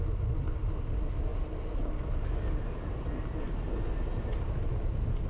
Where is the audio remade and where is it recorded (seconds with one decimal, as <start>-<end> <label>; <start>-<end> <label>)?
0.0-5.3 recorded